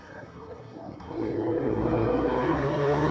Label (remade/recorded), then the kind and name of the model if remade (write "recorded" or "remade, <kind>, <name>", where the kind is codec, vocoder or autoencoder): remade, codec, SNAC